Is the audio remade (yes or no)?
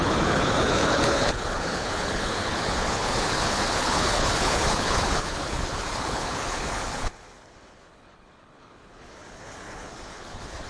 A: yes